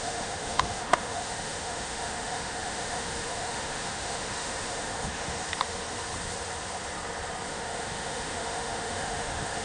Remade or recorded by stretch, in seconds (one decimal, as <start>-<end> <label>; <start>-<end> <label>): 0.0-5.4 remade; 5.4-7.5 recorded; 7.5-9.6 remade

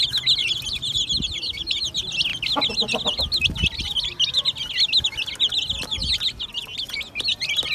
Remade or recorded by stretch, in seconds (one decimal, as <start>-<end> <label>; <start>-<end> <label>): 0.0-0.4 recorded; 0.4-1.4 remade; 1.4-6.0 recorded; 6.0-6.5 remade; 6.5-7.7 recorded

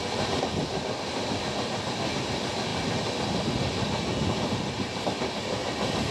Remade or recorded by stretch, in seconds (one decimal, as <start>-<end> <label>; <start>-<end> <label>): 0.0-6.1 recorded

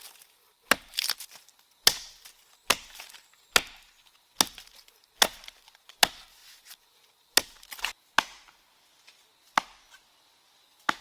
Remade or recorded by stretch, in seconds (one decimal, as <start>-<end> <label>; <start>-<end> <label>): 0.0-11.0 recorded